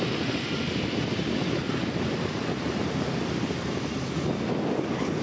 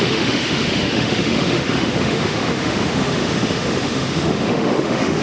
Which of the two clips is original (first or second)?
first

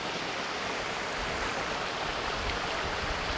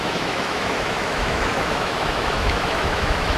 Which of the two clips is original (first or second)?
first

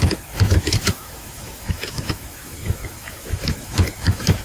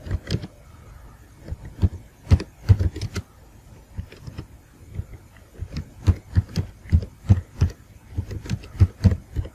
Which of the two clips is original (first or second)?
second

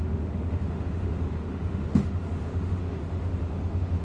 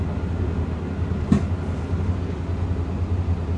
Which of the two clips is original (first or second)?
second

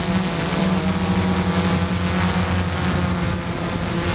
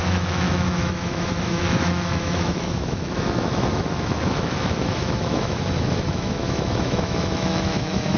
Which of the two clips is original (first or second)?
first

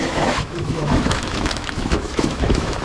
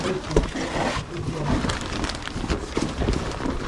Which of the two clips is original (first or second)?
second